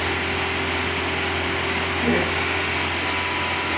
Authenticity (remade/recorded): recorded